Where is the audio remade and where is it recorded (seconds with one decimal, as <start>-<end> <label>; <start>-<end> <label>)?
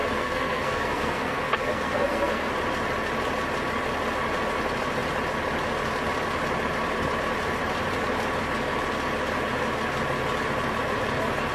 0.0-2.5 remade; 2.5-11.5 recorded